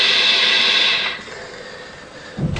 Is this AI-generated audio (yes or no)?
no